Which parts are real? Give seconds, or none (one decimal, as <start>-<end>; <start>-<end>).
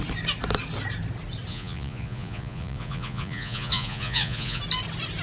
0.0-1.5; 4.6-5.2